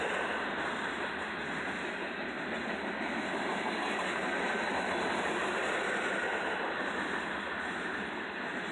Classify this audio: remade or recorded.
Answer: recorded